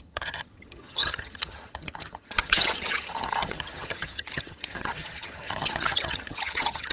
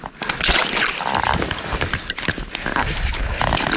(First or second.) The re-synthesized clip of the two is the first